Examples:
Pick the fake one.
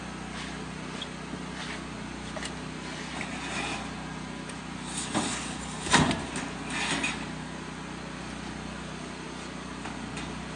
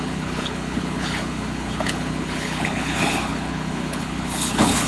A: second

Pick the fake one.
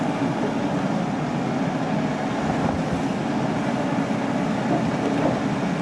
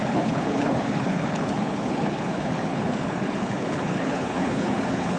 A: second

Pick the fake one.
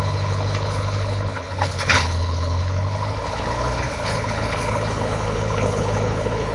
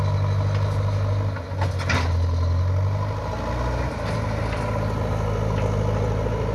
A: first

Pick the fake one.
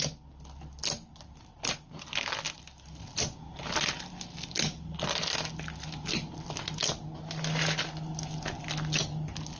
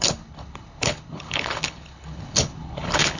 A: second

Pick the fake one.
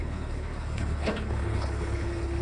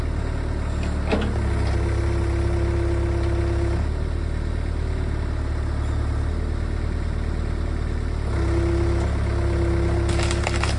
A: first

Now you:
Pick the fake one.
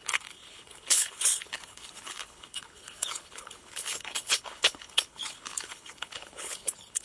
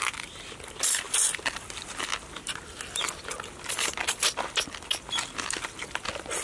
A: first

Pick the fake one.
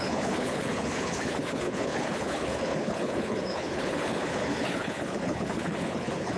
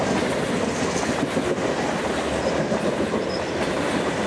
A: first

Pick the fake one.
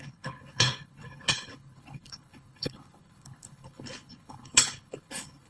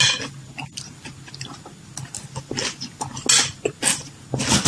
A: first